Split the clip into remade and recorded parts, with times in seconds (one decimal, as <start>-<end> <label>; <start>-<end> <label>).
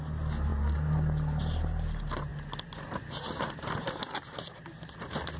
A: 0.0-5.4 recorded